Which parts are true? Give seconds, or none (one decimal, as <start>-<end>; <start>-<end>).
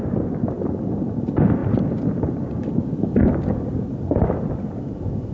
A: 0.0-5.3